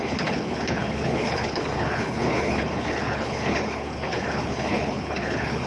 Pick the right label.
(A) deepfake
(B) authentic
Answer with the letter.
A